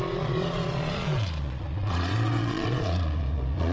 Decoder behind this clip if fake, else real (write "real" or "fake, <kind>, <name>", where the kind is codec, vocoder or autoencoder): fake, vocoder, Vocos